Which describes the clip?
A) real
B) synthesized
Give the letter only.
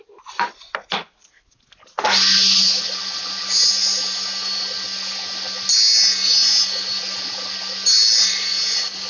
A